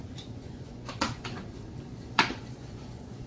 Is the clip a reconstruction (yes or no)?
yes